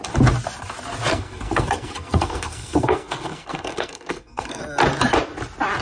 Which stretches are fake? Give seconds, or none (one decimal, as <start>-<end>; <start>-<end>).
1.1-4.6